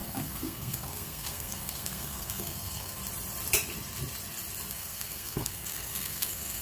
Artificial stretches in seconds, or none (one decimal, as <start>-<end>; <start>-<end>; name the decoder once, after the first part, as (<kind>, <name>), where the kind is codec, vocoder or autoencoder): 0.0-3.0 (codec, SNAC); 4.7-6.6